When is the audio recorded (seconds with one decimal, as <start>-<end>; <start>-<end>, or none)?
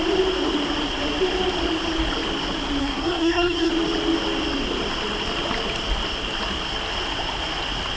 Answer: 0.0-2.8; 3.7-8.0